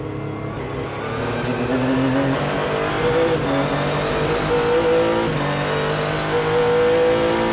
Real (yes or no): yes